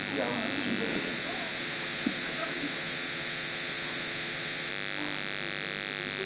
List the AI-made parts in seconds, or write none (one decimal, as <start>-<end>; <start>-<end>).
0.9-4.7